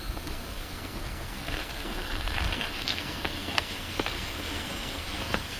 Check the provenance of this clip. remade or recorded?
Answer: remade